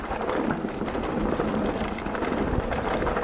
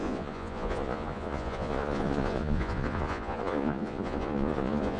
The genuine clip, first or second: first